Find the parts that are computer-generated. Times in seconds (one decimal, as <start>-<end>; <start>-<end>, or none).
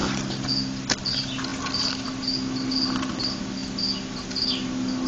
none